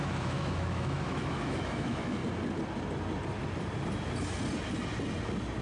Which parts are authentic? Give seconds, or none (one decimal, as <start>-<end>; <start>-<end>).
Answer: 2.2-5.6